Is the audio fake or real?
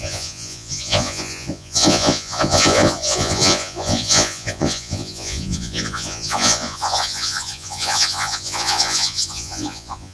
fake